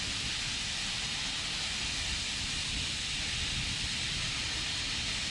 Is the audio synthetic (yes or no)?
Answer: yes